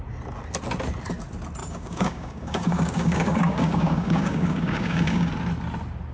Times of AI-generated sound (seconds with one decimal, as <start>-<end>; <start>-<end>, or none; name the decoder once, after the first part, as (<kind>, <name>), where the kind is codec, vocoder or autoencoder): 1.6-5.3 (codec, DAC)